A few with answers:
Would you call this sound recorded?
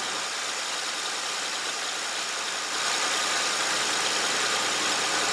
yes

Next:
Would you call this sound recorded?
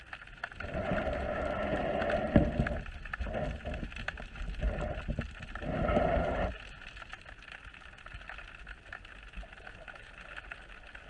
yes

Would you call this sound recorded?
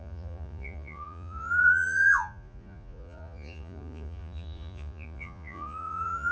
no